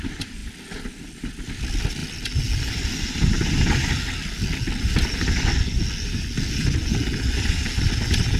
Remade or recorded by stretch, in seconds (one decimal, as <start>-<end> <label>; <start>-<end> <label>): 0.0-8.4 recorded